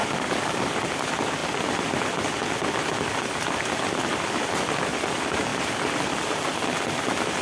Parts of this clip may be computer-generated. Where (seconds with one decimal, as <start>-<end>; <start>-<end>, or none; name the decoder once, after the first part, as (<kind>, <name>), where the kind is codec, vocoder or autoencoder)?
0.0-0.8 (codec, DAC)

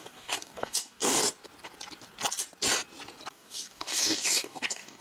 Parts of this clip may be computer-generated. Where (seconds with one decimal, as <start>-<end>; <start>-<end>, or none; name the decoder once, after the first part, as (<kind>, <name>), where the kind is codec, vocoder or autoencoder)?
0.0-1.2 (codec, DAC); 3.3-5.0

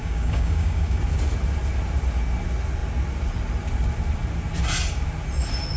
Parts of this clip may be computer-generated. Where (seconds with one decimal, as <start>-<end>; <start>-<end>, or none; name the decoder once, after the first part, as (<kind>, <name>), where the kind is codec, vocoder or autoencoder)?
0.0-1.0 (codec, DAC)

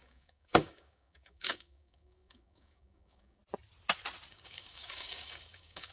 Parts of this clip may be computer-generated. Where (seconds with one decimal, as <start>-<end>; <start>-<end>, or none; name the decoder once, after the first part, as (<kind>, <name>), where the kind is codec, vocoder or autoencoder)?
0.0-3.4 (codec, DAC); 4.3-5.9

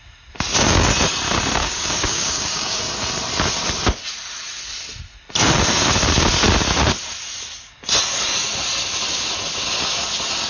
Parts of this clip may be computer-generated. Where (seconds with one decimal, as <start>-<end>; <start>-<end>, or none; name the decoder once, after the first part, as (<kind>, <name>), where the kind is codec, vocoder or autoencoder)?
1.6-2.8 (codec, DAC)

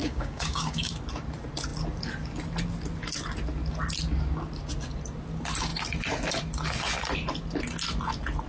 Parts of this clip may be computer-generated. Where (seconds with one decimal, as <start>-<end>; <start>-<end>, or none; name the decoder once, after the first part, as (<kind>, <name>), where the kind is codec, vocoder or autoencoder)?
0.0-0.9 (codec, DAC)